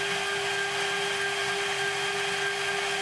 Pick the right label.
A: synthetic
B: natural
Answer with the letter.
B